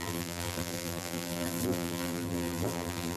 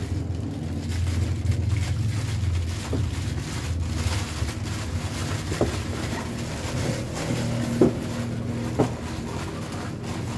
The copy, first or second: first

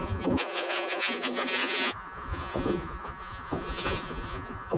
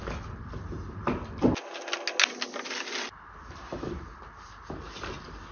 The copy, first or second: first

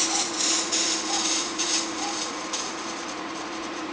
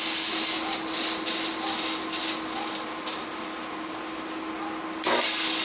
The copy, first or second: first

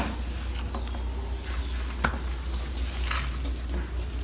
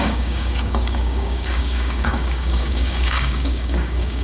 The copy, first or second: second